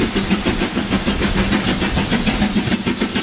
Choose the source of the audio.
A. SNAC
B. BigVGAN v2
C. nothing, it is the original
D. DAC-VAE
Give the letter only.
C